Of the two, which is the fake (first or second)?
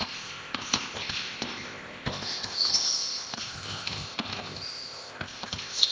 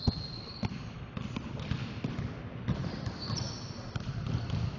first